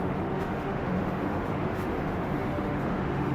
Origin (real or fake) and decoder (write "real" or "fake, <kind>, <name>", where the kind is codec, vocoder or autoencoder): fake, autoencoder, DAC-VAE